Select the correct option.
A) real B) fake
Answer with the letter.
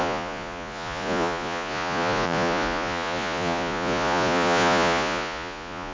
B